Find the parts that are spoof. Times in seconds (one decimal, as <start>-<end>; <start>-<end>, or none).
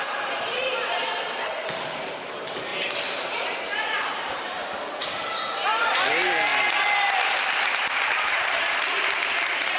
0.0-2.7; 3.3-6.5; 7.6-9.8